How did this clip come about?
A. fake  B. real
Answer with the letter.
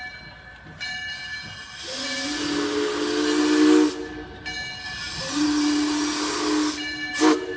B